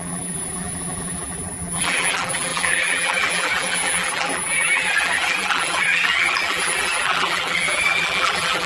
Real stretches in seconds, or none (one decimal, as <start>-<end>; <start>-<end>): none